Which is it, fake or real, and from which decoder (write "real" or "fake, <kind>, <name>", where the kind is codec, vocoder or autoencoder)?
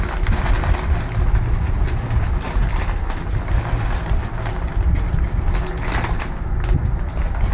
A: real